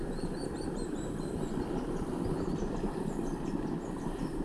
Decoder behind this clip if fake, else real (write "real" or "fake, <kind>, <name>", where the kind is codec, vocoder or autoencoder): real